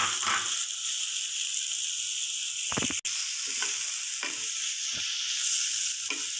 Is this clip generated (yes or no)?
no